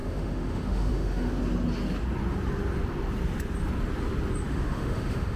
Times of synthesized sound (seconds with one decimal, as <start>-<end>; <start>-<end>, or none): 0.0-1.3; 4.5-5.4

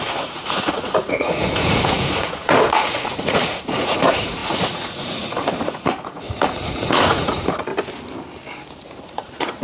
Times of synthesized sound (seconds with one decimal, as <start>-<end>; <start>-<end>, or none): 0.0-7.7; 8.9-9.6

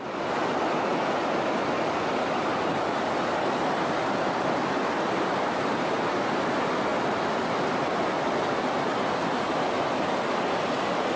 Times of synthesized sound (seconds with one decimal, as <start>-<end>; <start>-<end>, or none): none